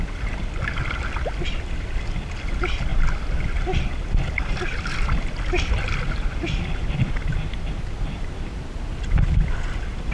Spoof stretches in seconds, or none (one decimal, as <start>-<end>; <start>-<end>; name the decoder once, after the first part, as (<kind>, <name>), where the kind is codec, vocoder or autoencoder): none